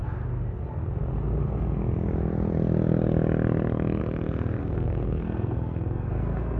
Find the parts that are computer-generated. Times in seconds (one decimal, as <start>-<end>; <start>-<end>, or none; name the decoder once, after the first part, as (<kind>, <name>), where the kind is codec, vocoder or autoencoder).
4.6-6.6 (codec, SNAC)